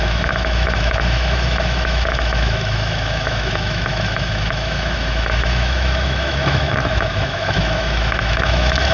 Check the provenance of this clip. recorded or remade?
remade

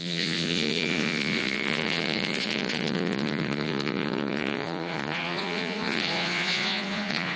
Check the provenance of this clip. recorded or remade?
remade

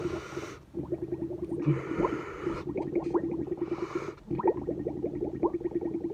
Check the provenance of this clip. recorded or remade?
recorded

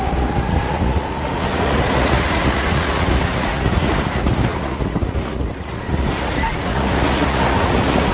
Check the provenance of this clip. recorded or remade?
remade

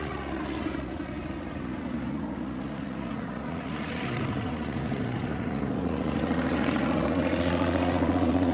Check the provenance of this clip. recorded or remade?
remade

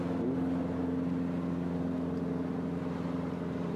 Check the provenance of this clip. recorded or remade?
recorded